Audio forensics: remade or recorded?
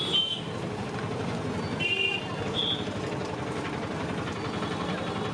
recorded